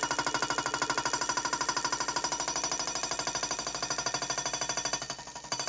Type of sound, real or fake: real